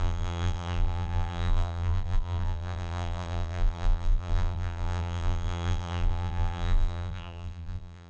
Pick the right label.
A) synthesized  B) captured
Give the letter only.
A